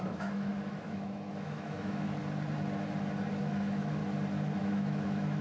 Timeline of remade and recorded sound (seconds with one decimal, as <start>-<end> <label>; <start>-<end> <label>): 0.0-2.2 remade; 2.2-3.4 recorded; 3.4-4.0 remade; 4.0-4.6 recorded; 4.6-5.4 remade